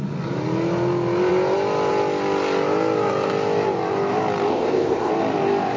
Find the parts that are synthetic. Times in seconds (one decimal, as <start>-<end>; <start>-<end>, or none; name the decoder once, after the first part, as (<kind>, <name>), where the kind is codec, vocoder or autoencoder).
4.5-5.1 (codec, ZipCodec)